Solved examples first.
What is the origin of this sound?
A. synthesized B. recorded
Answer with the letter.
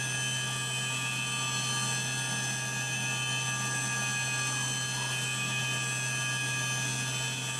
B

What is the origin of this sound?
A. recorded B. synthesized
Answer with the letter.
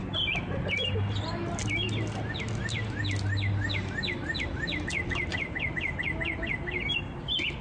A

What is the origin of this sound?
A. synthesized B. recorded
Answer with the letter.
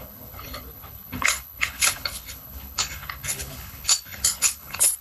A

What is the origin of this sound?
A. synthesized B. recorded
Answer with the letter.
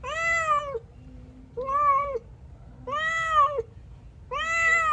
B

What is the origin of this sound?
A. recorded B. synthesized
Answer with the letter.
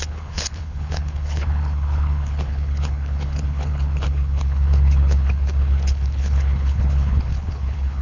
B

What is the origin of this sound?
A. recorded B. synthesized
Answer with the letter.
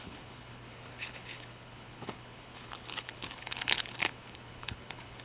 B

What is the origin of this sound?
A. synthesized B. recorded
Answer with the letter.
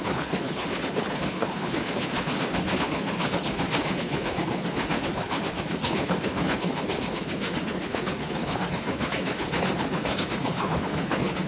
A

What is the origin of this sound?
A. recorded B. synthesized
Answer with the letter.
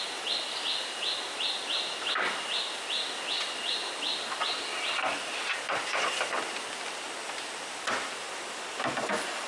A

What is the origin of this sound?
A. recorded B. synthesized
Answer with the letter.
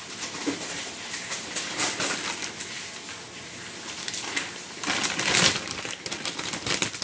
A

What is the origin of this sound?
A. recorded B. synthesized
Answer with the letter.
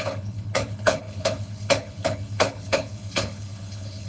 B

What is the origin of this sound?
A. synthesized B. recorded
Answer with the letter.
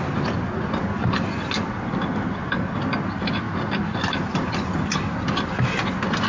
B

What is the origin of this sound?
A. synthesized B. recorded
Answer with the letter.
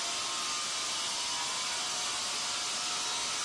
B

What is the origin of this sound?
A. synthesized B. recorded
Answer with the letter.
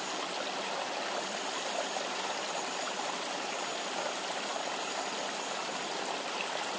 B